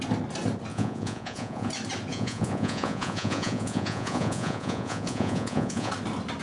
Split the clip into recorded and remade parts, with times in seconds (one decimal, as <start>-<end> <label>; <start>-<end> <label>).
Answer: 0.0-0.7 recorded; 0.7-1.7 remade; 1.7-2.1 recorded; 2.1-5.9 remade; 5.9-6.4 recorded